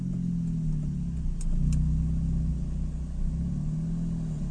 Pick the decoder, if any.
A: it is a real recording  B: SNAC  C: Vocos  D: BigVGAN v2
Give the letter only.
A